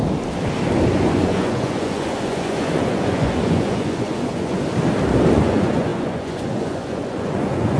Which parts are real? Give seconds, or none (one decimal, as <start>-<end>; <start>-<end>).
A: 0.0-0.9; 4.6-5.3